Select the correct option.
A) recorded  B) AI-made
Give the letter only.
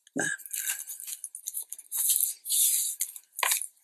A